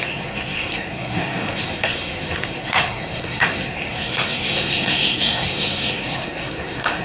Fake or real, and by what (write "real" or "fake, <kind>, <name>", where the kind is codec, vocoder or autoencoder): fake, codec, SNAC